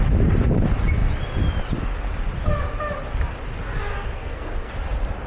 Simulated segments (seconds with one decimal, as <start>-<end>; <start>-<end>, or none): 3.9-4.7